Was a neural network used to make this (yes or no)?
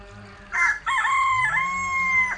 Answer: no